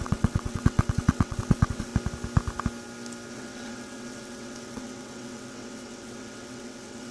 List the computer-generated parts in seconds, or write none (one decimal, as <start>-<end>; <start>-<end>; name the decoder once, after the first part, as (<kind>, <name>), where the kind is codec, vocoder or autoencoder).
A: 0.0-1.9 (vocoder, WaveNeXt); 3.3-7.1